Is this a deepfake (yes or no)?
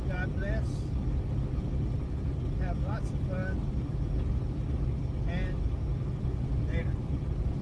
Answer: no